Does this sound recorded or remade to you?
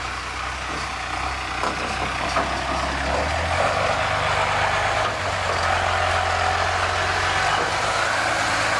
recorded